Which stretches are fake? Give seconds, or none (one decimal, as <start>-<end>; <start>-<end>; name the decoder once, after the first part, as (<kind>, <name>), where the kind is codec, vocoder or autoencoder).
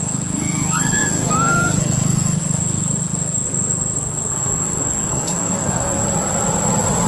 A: 0.0-6.0 (codec, SNAC)